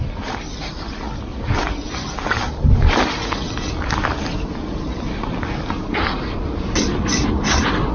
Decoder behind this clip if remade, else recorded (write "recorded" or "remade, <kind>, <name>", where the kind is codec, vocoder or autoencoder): recorded